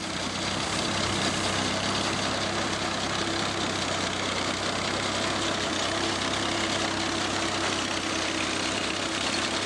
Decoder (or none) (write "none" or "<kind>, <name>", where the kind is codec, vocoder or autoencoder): none